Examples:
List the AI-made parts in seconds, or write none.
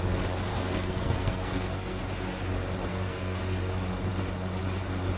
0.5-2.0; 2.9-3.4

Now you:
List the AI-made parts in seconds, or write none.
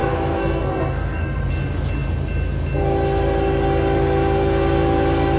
0.0-1.5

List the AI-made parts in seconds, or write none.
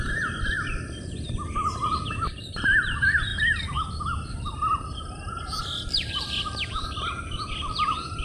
0.0-3.3; 5.6-8.2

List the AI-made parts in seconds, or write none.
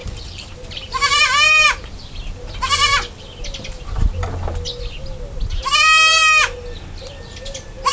0.0-1.2